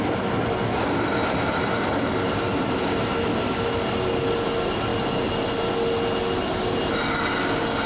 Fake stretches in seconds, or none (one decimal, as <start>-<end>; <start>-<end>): none